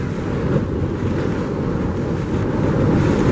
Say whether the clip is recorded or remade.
recorded